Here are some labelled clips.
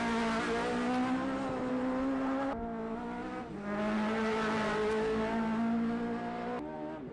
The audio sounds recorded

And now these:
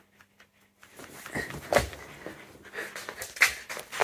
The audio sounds recorded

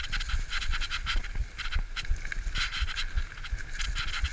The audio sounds recorded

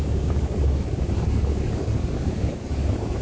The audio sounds remade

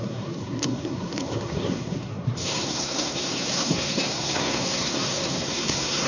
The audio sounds remade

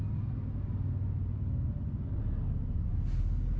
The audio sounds recorded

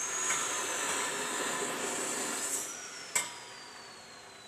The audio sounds recorded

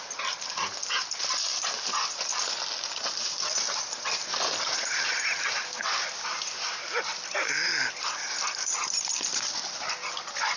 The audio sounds recorded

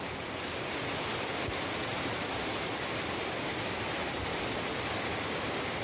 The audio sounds remade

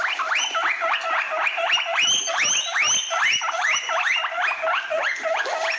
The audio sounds recorded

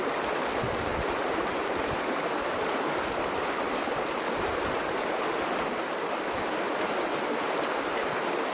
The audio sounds recorded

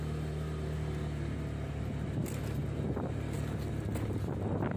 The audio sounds recorded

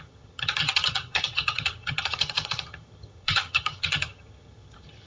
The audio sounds remade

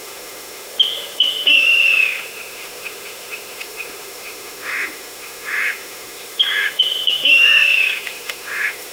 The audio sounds remade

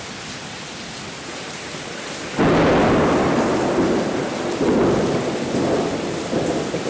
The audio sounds recorded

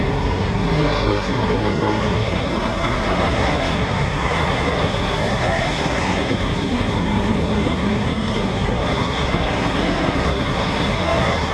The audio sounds remade